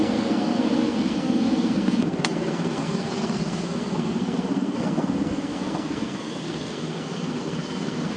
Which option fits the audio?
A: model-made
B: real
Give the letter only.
A